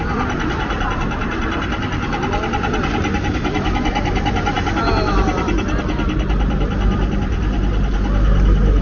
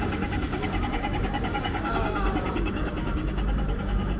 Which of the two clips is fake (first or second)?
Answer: second